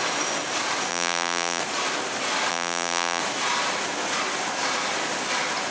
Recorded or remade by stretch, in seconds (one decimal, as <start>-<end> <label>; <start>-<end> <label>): 0.0-0.9 recorded; 0.9-1.6 remade; 1.6-2.5 recorded; 2.5-3.2 remade; 3.2-5.7 recorded